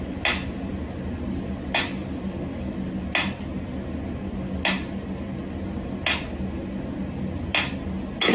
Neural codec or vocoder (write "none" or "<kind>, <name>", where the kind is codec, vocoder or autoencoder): none